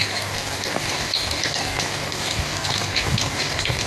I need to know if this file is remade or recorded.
remade